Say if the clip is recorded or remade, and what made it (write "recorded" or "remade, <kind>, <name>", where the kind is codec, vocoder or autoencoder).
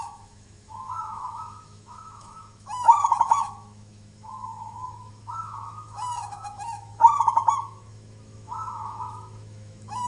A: remade, autoencoder, DAC-VAE